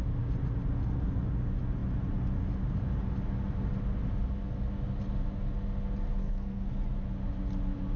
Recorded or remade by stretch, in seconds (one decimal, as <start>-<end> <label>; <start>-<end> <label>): 0.0-6.2 recorded; 6.2-6.7 remade; 6.7-8.0 recorded